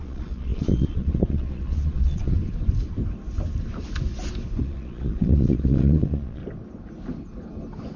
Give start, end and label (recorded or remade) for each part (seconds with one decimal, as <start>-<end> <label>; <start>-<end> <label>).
0.0-2.3 remade; 2.3-4.6 recorded; 4.6-6.4 remade; 6.4-8.0 recorded